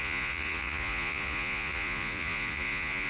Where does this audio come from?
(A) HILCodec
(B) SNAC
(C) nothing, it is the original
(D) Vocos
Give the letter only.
D